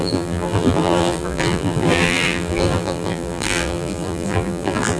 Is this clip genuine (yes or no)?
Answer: no